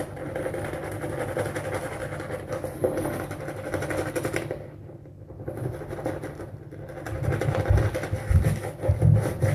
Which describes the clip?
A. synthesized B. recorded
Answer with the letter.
B